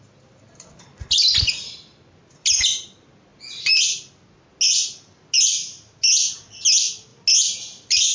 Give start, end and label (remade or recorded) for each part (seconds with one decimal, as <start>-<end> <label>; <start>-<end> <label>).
0.0-8.1 recorded